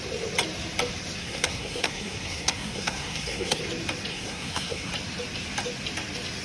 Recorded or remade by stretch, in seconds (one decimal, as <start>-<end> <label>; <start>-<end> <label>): 0.0-1.2 recorded; 1.2-3.6 remade; 3.6-4.1 recorded; 4.1-4.9 remade; 4.9-6.4 recorded